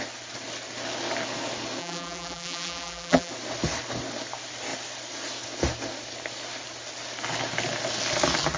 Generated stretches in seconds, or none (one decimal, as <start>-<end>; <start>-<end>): 1.8-3.3